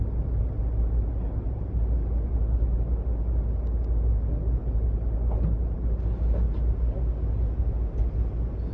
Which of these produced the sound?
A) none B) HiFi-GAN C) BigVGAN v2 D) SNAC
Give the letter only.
A